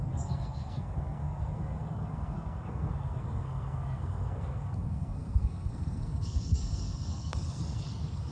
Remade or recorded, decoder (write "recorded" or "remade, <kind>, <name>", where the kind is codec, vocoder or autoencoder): remade, codec, SNAC